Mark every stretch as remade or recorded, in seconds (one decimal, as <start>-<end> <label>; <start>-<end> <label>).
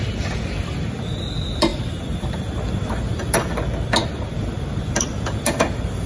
0.0-6.1 recorded